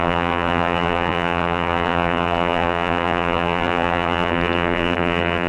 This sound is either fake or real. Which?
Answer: fake